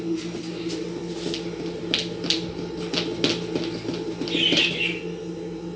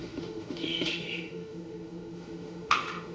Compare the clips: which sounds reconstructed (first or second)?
second